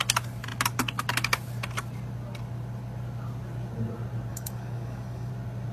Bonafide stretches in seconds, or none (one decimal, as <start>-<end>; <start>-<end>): 0.0-4.3; 5.3-5.7